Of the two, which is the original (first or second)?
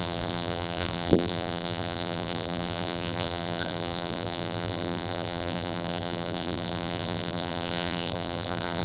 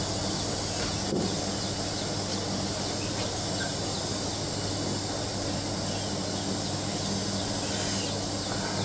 second